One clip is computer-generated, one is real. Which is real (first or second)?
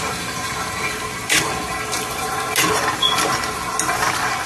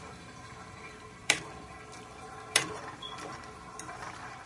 first